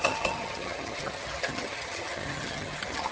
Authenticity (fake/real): fake